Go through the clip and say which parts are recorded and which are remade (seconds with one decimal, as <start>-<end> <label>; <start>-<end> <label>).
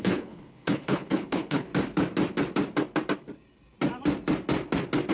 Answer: 0.0-1.7 remade; 1.7-5.1 recorded